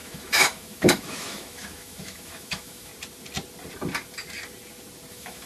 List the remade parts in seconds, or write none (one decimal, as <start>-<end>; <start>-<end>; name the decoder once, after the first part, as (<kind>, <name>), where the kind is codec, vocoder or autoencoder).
0.0-2.9 (autoencoder, DAC-VAE); 5.1-5.5

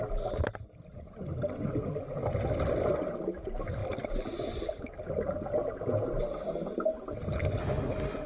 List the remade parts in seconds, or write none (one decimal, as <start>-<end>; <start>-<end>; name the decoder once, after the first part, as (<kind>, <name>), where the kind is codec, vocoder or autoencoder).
7.6-8.3 (autoencoder, DAC-VAE)

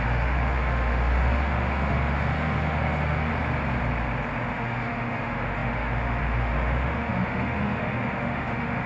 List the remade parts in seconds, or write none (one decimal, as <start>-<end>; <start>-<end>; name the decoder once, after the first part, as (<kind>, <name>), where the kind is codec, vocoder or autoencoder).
0.0-3.3 (autoencoder, DAC-VAE); 4.5-8.9

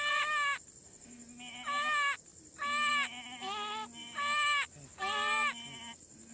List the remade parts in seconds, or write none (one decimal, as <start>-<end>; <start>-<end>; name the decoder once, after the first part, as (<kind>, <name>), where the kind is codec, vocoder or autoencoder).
none

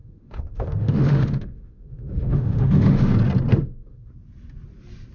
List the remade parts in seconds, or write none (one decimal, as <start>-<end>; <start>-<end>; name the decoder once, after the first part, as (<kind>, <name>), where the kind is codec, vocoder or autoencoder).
0.0-3.1 (autoencoder, DAC-VAE); 3.5-4.1